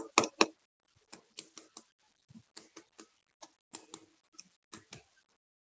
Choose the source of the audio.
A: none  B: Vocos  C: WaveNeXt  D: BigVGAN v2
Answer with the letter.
A